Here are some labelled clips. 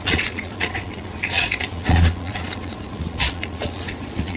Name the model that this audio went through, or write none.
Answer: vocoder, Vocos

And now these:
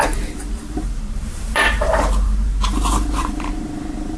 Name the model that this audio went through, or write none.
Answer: vocoder, BigVGAN v2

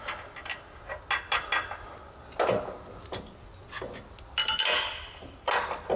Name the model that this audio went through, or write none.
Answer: none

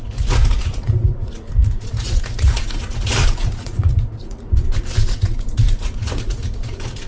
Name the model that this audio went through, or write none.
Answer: vocoder, Vocos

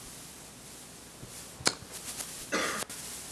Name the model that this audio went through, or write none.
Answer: none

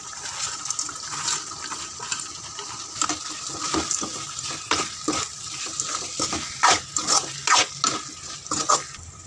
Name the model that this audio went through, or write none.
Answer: none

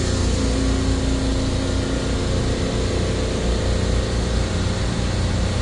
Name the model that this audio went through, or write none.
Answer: none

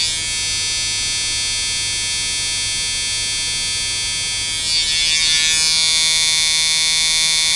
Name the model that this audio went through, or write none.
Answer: none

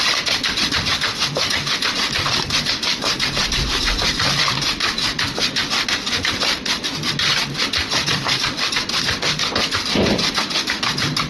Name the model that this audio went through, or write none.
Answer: none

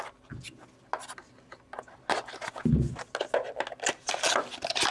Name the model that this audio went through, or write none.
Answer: none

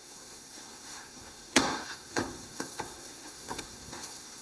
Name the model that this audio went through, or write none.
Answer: codec, SNAC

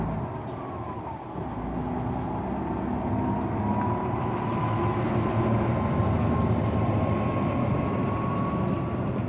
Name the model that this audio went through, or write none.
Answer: none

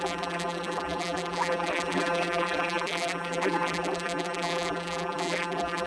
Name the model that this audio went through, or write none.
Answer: vocoder, BigVGAN v2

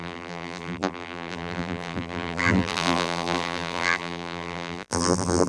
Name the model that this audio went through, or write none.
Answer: vocoder, BigVGAN v2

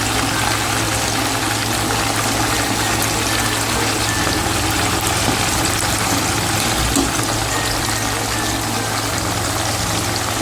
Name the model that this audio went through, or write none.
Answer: none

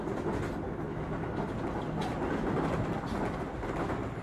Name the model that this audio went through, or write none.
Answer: none